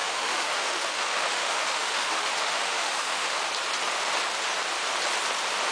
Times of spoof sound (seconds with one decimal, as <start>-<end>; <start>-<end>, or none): 0.0-3.4